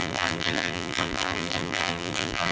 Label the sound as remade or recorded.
remade